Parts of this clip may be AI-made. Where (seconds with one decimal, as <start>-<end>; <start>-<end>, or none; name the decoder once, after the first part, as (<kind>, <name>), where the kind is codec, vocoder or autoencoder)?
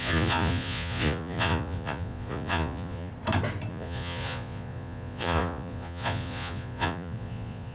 0.0-3.1 (vocoder, Vocos); 3.7-7.7